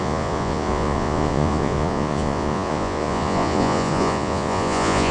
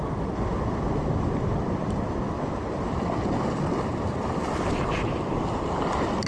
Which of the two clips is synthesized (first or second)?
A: first